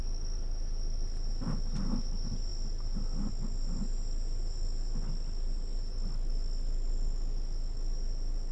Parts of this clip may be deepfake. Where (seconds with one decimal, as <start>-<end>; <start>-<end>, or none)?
none